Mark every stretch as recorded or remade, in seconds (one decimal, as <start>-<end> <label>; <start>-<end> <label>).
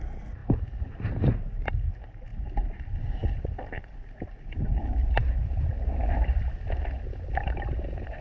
0.0-8.2 recorded